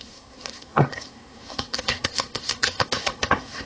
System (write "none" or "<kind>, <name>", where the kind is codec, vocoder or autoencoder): codec, SNAC